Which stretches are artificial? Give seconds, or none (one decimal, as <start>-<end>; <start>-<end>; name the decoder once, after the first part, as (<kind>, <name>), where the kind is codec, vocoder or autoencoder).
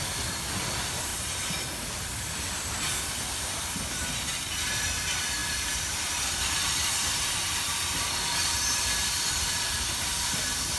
0.0-10.8 (vocoder, BigVGAN v2)